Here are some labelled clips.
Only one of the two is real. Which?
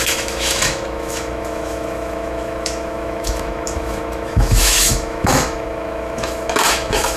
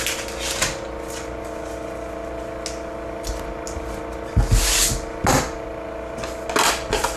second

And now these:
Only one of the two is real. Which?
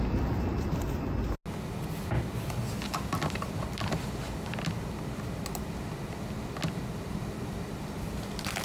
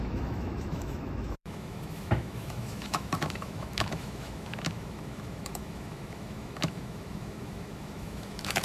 first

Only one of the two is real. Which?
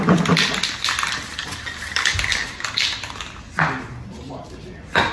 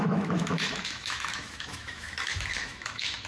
first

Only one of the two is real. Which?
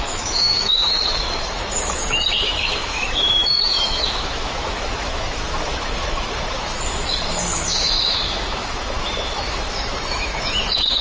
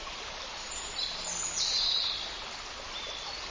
second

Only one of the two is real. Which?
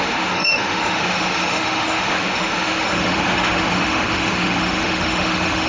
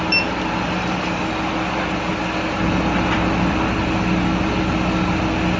second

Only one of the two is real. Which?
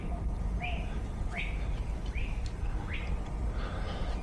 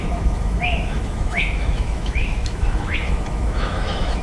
first